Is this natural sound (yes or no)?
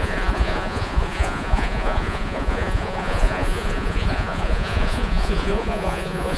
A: no